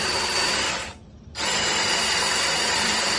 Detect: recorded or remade remade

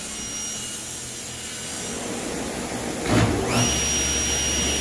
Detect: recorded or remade recorded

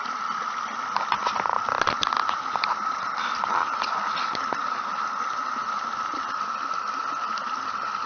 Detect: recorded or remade remade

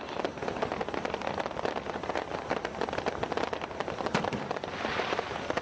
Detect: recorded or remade remade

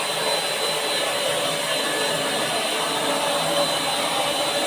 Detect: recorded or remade recorded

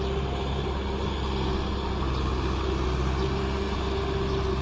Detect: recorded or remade recorded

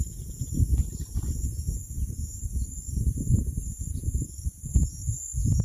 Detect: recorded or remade remade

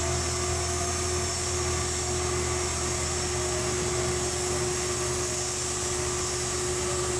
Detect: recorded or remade recorded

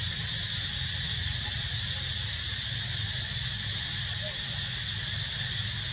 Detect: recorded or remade recorded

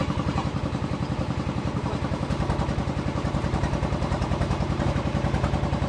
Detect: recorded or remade remade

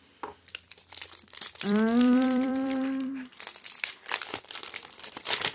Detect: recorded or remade remade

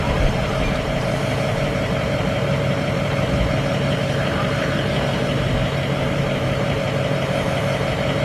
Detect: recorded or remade remade